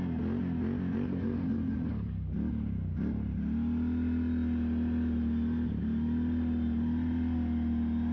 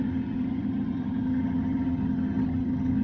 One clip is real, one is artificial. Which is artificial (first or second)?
second